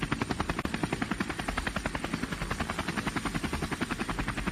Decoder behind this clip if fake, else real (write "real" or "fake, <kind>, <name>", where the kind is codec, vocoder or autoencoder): real